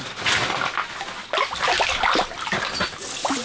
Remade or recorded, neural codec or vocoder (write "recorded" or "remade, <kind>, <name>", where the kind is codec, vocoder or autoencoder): recorded